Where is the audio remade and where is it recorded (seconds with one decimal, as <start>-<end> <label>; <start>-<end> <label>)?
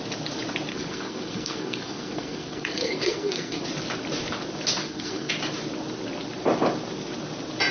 0.0-0.7 recorded; 0.7-3.6 remade; 3.6-4.8 recorded; 4.8-5.3 remade; 5.3-7.7 recorded